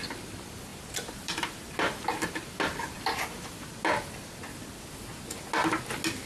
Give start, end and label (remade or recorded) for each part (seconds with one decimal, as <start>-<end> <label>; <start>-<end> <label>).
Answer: 0.0-0.7 recorded; 0.7-3.6 remade; 3.6-6.3 recorded